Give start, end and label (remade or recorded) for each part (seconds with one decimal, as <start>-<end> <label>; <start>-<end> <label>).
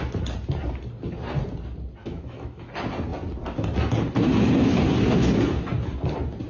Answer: 0.0-2.0 recorded; 2.0-2.7 remade; 2.7-6.5 recorded